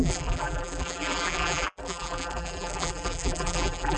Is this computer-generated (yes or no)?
yes